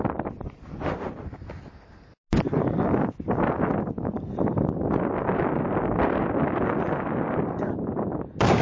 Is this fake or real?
real